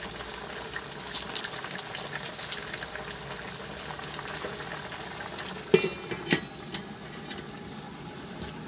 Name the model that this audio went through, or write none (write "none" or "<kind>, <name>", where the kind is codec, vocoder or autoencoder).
none